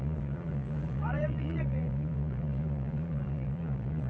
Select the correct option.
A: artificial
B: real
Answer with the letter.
A